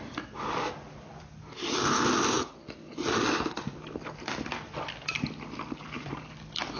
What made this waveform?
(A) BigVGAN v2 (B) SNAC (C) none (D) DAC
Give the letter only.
C